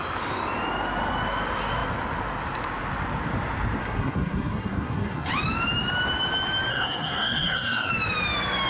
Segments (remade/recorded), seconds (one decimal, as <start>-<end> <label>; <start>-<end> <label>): 0.0-3.8 recorded; 3.8-5.3 remade; 5.3-6.7 recorded; 6.7-7.9 remade; 7.9-8.7 recorded